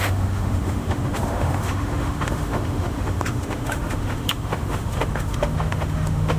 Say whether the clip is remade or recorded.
remade